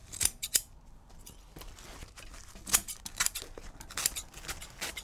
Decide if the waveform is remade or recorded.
recorded